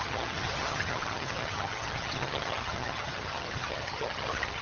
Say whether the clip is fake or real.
fake